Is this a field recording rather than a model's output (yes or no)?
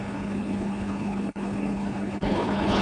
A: no